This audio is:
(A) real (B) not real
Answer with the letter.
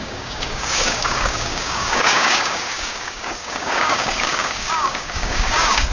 B